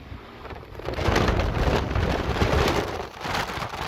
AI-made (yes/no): yes